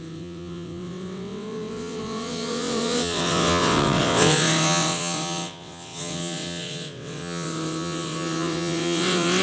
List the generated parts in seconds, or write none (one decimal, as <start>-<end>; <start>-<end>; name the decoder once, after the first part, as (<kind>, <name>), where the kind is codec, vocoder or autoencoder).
0.0-9.4 (vocoder, WaveNeXt)